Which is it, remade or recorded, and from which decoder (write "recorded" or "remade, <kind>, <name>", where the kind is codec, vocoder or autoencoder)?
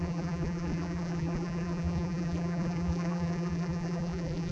remade, vocoder, BigVGAN v2